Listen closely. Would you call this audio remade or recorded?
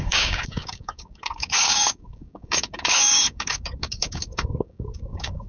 remade